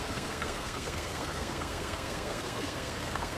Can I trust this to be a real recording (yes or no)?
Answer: no